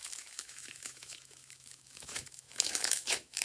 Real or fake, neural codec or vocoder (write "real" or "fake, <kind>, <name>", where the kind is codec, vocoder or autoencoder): fake, autoencoder, DAC-VAE